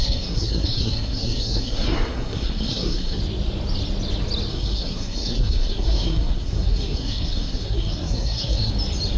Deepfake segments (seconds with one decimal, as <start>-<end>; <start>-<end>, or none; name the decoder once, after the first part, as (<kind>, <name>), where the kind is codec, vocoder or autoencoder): 0.0-3.2 (codec, SNAC); 4.5-8.7